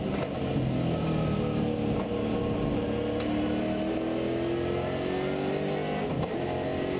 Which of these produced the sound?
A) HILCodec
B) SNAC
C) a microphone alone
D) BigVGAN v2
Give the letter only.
C